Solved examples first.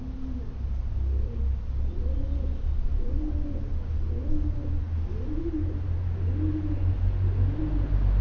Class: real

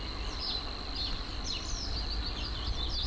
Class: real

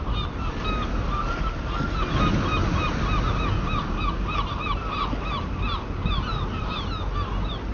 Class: real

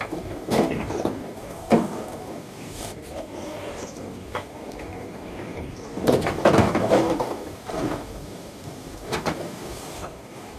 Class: fake